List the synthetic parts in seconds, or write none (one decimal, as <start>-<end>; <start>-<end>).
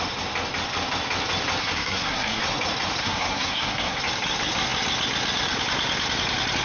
1.6-2.4; 3.0-4.0